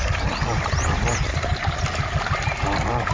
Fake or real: real